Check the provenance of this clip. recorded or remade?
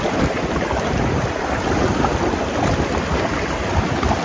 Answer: recorded